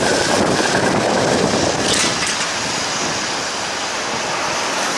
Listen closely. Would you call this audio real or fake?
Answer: real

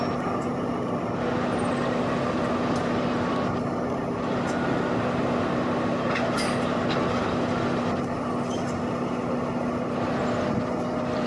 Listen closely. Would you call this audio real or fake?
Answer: real